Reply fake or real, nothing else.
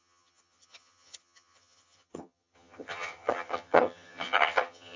fake